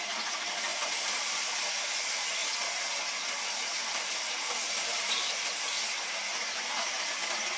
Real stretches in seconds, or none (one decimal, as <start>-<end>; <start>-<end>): 0.0-0.7; 1.3-3.9; 5.5-6.3; 7.1-7.6